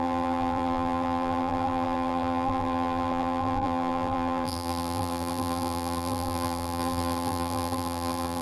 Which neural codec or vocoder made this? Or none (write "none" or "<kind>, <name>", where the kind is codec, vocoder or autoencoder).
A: vocoder, BigVGAN v2